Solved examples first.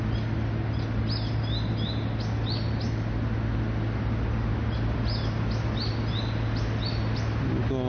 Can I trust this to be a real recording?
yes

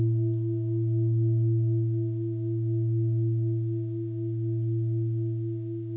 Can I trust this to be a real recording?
yes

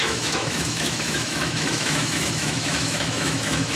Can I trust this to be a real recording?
no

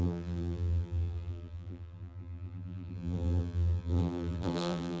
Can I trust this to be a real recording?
no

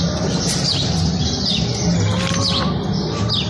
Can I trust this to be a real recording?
yes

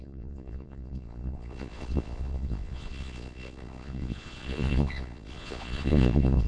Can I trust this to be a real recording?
no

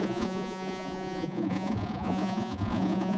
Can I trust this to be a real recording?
no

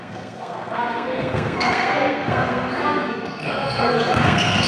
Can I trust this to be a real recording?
no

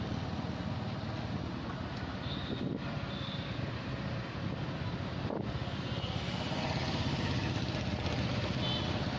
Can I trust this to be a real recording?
yes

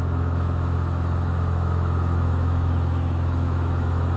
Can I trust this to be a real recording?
no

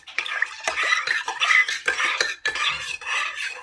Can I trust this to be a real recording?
yes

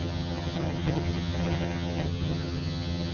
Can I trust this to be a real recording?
no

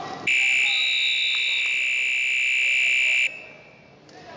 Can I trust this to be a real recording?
yes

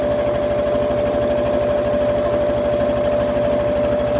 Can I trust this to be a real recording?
yes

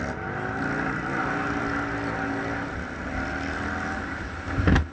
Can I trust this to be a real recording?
yes